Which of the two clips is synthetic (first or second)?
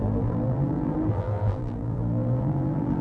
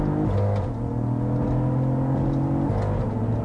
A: first